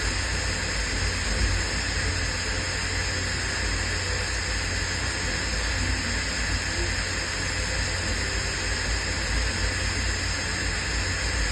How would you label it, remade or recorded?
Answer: recorded